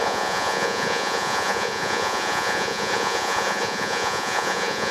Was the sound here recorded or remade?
remade